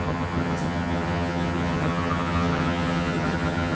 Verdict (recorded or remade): remade